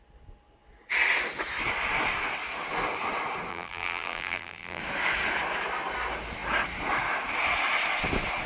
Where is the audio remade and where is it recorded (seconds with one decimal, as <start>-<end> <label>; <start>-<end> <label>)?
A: 0.0-3.5 recorded; 3.5-4.8 remade; 4.8-8.5 recorded

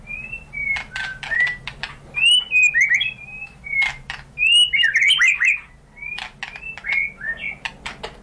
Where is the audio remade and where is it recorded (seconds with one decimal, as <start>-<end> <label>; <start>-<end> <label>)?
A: 0.0-8.2 recorded